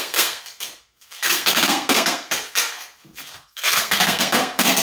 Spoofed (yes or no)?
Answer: yes